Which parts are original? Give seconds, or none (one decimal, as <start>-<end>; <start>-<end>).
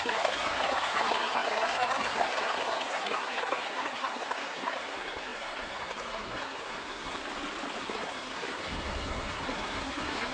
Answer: 7.2-7.8